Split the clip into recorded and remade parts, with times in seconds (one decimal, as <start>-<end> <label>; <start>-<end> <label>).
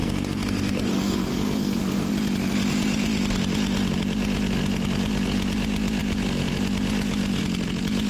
0.0-2.1 remade; 2.1-8.1 recorded